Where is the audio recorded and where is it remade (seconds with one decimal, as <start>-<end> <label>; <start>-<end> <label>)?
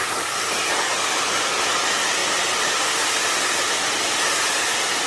0.0-0.8 remade; 0.8-5.1 recorded